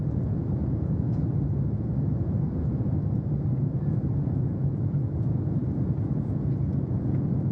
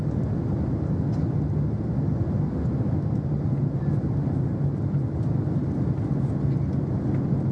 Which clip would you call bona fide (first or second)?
second